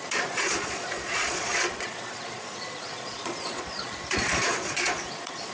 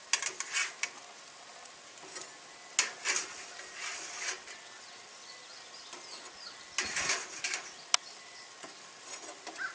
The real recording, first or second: second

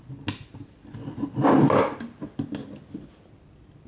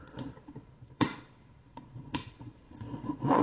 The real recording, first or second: first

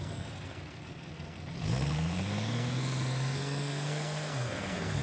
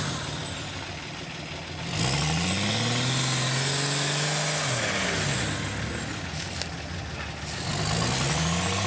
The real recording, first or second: second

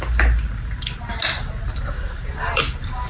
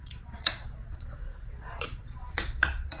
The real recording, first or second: first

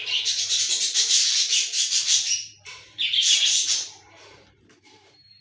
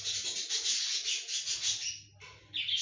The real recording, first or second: second